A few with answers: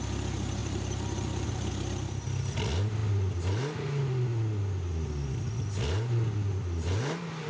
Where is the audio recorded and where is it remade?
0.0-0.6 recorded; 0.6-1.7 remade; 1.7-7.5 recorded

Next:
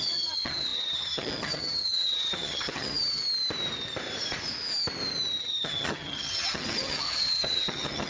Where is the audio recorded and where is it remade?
0.0-3.2 remade; 3.2-5.4 recorded; 5.4-8.1 remade

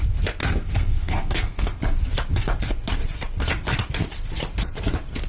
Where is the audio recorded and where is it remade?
0.0-0.4 recorded; 0.4-1.8 remade; 1.8-5.3 recorded

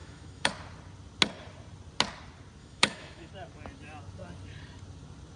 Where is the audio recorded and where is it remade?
0.0-0.5 remade; 0.5-2.6 recorded; 2.6-3.3 remade; 3.3-5.4 recorded

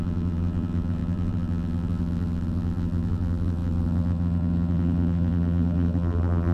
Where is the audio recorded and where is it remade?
0.0-6.5 remade

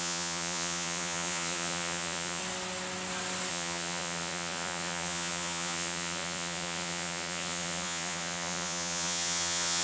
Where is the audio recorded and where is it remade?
0.0-2.4 remade; 2.4-3.5 recorded; 3.5-9.8 remade

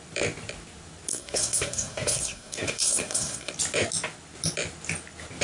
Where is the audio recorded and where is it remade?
0.0-1.1 recorded; 1.1-3.5 remade; 3.5-5.4 recorded

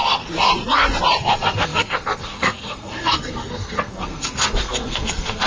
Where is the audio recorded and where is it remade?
0.0-1.2 recorded; 1.2-5.5 remade